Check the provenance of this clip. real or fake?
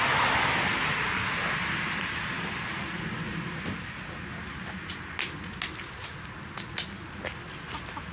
real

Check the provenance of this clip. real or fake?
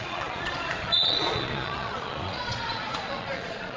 fake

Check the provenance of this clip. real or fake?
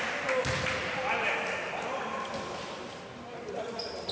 real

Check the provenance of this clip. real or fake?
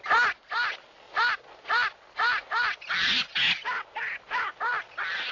real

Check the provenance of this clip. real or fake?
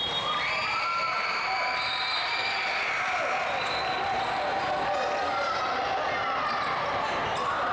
real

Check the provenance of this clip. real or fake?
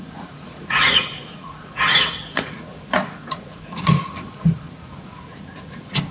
fake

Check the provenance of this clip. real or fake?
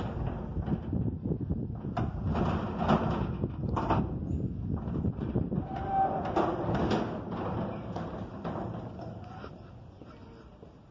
real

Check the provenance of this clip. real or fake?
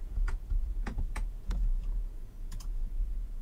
fake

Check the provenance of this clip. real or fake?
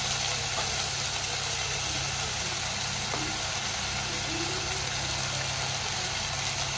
real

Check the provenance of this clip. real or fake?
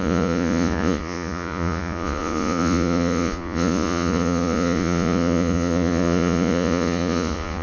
fake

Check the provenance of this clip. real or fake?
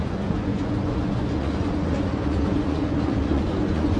fake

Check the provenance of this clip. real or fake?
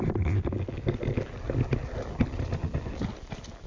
real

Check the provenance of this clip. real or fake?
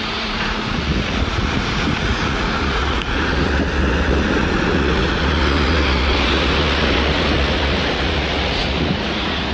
fake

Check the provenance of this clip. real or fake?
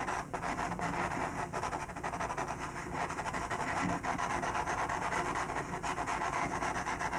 real